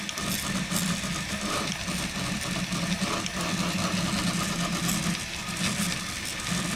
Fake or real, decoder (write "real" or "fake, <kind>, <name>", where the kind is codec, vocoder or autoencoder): real